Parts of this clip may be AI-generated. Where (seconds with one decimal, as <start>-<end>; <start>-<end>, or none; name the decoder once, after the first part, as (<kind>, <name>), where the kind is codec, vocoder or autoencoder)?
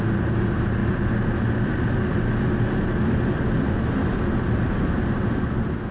none